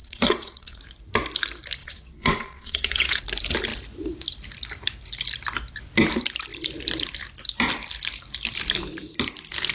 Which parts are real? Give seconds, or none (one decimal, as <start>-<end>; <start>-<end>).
0.8-1.8; 3.2-9.7